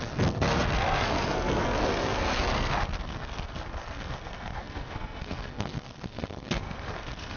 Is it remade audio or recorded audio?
remade